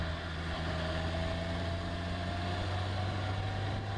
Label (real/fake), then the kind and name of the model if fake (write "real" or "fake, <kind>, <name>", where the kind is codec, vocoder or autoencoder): real